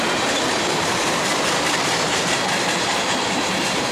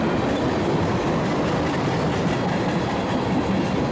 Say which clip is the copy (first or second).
first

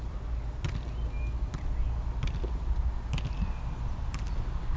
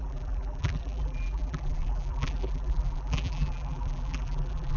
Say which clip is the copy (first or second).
second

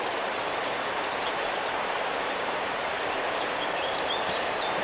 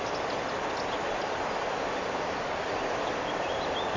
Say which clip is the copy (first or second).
first